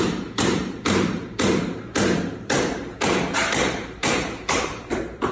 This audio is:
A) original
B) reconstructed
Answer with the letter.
B